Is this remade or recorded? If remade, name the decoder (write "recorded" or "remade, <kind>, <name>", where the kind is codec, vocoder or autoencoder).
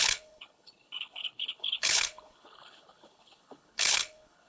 remade, codec, HILCodec